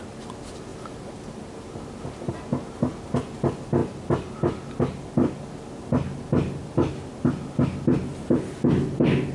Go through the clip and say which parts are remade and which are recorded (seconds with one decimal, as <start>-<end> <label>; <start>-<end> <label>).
0.0-9.3 recorded